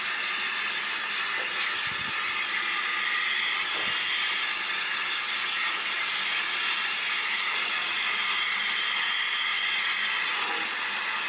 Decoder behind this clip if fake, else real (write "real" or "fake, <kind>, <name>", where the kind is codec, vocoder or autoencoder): real